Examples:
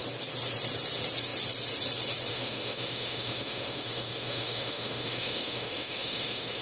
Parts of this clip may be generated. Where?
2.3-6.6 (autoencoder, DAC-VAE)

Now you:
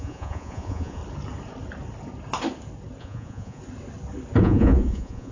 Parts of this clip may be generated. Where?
0.0-1.0 (vocoder, Vocos); 3.0-3.6; 4.4-5.3

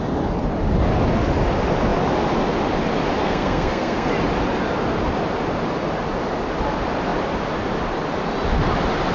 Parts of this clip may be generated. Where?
3.2-4.1 (codec, SNAC)

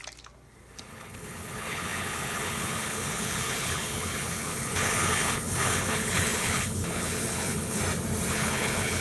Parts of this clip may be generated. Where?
0.9-7.8 (codec, HILCodec); 8.3-9.0

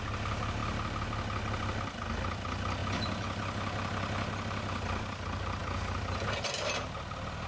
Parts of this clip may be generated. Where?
none